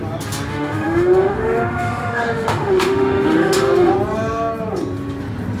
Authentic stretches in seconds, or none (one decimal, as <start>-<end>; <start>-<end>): 0.0-0.5; 3.9-5.6